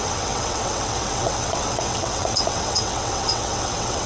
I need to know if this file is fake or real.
fake